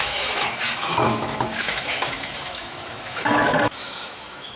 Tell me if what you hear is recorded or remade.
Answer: remade